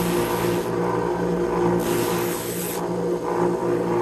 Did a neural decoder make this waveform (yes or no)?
no